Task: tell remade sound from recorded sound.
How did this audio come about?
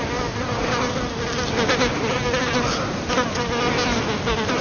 recorded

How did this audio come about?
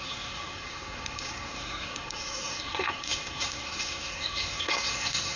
remade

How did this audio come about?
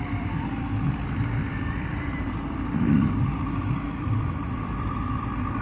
remade